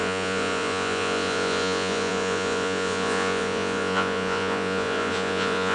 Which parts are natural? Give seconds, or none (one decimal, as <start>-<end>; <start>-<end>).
none